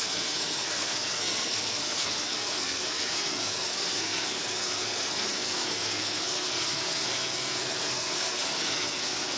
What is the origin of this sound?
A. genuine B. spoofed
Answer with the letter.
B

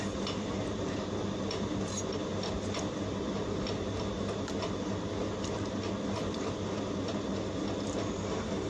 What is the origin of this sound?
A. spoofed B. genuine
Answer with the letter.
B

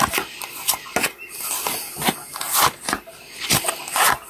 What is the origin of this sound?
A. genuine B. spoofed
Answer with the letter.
A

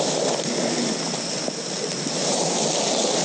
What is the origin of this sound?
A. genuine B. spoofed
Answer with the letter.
A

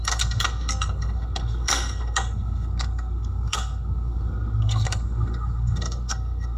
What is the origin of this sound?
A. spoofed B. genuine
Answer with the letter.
A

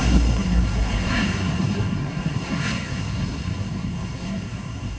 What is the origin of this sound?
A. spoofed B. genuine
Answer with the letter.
A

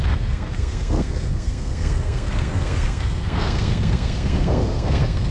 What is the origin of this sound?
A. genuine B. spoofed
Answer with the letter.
B